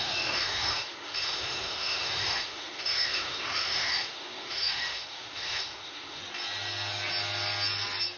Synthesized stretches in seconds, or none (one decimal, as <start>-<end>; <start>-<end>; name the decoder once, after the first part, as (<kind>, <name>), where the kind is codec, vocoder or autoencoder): 0.0-6.2 (autoencoder, DAC-VAE)